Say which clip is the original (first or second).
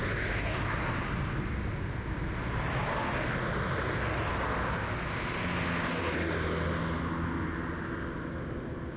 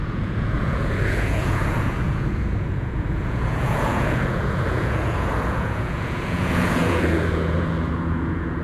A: first